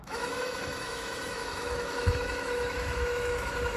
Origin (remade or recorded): remade